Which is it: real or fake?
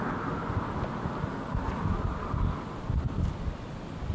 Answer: real